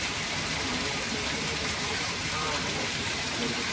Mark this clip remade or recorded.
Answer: remade